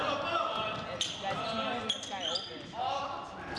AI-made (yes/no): no